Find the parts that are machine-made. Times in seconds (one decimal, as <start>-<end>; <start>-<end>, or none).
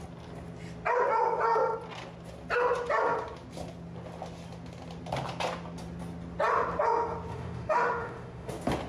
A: 7.3-8.5